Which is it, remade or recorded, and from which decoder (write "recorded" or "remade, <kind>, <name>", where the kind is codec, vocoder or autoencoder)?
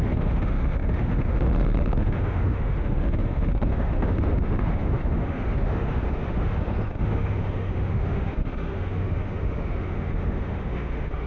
remade, autoencoder, DAC-VAE